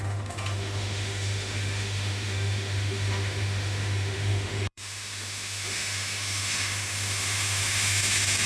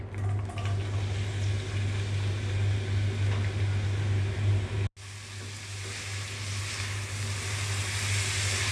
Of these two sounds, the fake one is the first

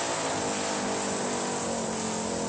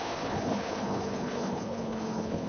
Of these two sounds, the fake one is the second